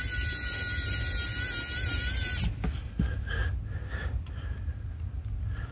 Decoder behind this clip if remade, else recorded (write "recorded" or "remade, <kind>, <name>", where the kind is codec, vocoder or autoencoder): recorded